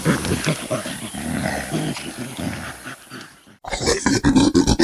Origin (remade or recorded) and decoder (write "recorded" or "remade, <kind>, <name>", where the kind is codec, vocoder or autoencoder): remade, vocoder, BigVGAN v2